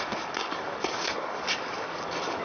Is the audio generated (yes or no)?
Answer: yes